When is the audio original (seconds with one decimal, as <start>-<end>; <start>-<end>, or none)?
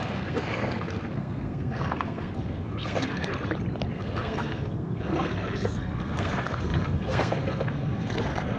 3.3-3.9